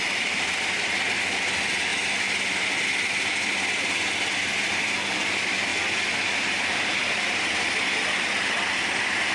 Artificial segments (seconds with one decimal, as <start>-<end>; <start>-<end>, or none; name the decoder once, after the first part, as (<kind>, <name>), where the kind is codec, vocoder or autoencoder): 0.0-1.9 (vocoder, BigVGAN v2); 4.7-5.7; 6.3-9.3